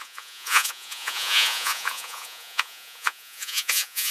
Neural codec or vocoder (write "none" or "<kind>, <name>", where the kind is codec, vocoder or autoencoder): vocoder, Vocos